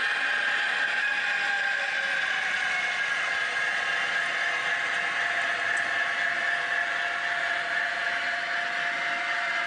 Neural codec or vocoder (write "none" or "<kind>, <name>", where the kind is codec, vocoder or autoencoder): none